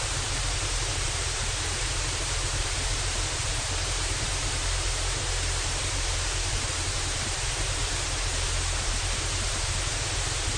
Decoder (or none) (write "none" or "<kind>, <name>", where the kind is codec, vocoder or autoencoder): vocoder, BigVGAN v2